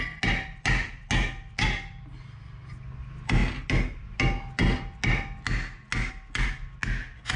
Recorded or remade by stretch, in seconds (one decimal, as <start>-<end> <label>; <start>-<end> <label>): 0.0-7.4 recorded